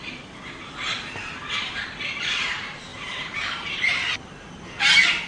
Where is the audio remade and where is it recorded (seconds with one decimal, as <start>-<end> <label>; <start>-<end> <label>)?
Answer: 0.0-2.9 recorded; 2.9-3.7 remade; 3.7-5.3 recorded